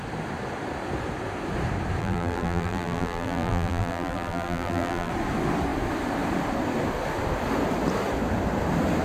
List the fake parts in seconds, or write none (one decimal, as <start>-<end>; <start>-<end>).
2.0-5.1